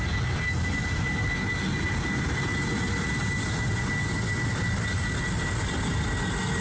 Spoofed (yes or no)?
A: no